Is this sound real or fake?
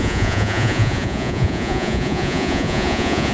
fake